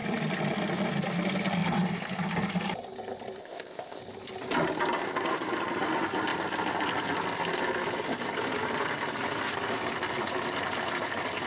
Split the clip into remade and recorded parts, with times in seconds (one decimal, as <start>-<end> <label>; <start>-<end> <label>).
0.0-3.4 recorded; 3.4-4.0 remade; 4.0-11.5 recorded